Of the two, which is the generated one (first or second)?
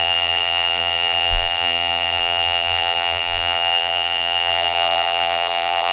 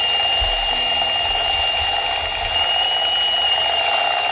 first